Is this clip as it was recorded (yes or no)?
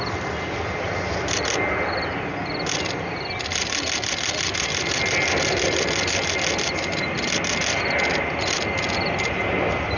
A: yes